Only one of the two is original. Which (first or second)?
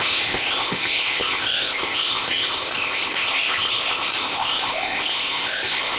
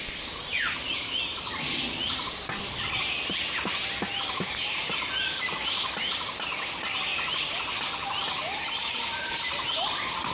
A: second